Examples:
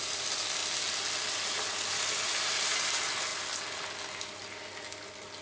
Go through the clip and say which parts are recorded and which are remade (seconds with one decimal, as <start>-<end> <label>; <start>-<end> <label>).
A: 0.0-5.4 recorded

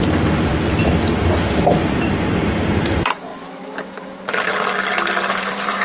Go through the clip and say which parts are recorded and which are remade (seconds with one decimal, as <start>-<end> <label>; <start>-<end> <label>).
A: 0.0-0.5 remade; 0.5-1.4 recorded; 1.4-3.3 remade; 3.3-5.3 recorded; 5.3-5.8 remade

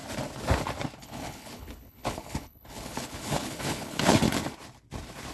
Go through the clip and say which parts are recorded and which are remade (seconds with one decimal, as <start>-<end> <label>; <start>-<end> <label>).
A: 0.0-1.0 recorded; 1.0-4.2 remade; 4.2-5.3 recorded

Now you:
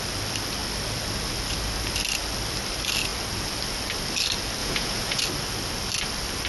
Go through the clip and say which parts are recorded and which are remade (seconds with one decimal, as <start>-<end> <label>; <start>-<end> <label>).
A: 0.0-4.6 recorded; 4.6-5.2 remade; 5.2-6.5 recorded

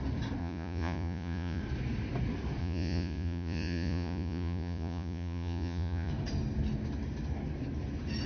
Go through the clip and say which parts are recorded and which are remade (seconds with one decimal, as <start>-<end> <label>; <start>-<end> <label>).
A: 0.0-0.4 recorded; 0.4-1.6 remade; 1.6-2.6 recorded; 2.6-6.1 remade; 6.1-8.3 recorded

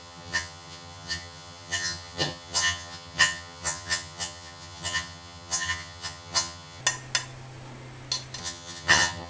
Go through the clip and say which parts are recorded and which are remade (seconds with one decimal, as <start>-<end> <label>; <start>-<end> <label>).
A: 0.0-6.8 remade; 6.8-8.4 recorded; 8.4-9.3 remade

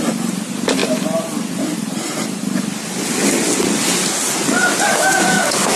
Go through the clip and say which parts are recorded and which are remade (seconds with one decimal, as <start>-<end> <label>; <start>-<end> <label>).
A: 0.0-4.9 recorded; 4.9-5.8 remade

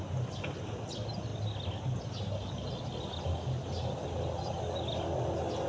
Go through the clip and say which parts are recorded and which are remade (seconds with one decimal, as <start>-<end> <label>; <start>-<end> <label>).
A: 0.0-5.7 recorded